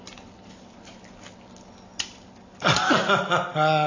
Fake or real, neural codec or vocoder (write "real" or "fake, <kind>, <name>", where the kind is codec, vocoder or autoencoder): real